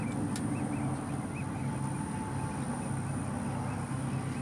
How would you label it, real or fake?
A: real